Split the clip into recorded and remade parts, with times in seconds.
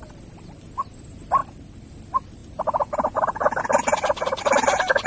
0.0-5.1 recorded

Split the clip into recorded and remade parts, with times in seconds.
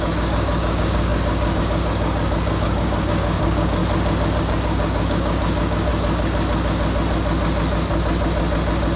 0.0-3.8 remade; 3.8-4.4 recorded; 4.4-5.9 remade; 5.9-9.0 recorded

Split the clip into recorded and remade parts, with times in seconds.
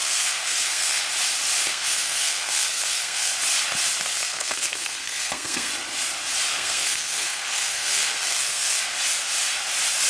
0.0-1.0 remade; 1.0-1.7 recorded; 1.7-3.3 remade; 3.3-4.1 recorded; 4.1-5.7 remade; 5.7-6.5 recorded; 6.5-8.8 remade; 8.8-10.1 recorded